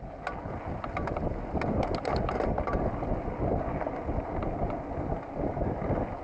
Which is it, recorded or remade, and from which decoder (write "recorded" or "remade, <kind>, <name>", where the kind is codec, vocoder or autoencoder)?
recorded